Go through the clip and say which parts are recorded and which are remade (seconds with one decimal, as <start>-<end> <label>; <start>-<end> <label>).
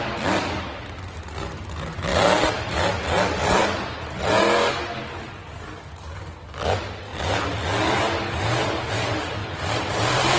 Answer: 0.0-2.1 recorded; 2.1-4.3 remade; 4.3-9.4 recorded; 9.4-10.4 remade